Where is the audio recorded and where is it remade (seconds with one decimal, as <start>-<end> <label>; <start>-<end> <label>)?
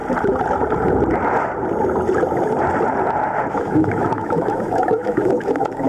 0.0-3.5 recorded; 3.5-5.9 remade